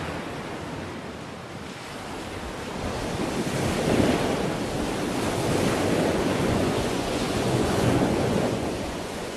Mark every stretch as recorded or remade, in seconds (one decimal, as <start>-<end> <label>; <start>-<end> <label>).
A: 0.0-6.1 recorded; 6.1-9.4 remade